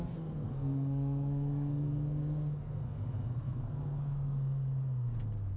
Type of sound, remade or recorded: remade